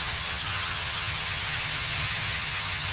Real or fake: fake